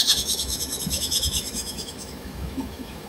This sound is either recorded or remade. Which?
remade